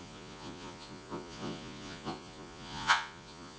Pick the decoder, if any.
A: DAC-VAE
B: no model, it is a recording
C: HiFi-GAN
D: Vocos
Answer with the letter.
D